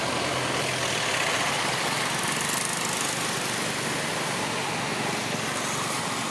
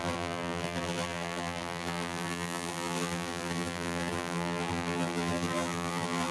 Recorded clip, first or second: first